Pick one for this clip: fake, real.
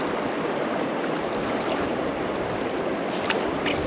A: real